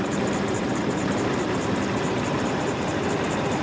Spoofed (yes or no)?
yes